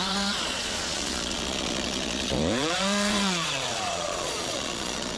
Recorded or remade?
remade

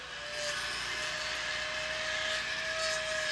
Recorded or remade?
recorded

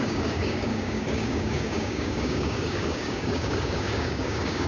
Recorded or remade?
remade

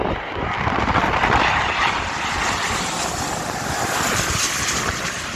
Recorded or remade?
recorded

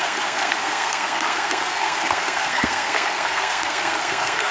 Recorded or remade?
remade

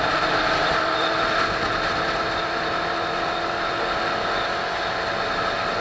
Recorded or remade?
recorded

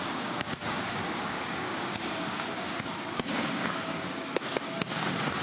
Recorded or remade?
remade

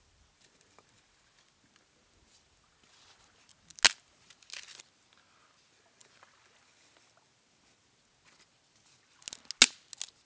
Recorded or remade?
recorded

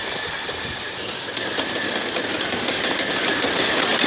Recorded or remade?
recorded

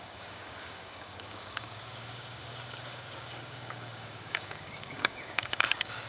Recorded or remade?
remade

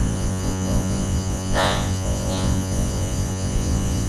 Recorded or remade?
remade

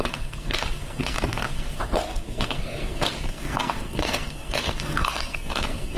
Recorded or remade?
remade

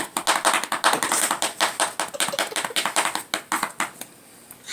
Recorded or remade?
recorded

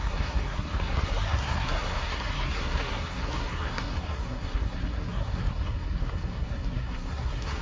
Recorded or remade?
remade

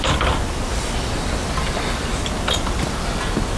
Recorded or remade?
remade